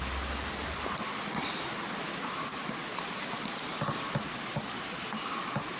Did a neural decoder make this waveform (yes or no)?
no